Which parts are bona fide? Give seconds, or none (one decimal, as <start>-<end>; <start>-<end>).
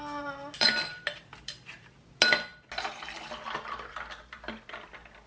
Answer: 0.0-5.3